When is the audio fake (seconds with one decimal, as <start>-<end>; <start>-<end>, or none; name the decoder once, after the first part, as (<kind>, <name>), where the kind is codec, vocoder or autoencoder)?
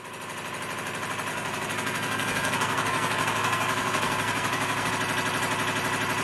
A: 1.3-4.9 (codec, SNAC)